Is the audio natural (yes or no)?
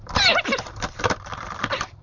no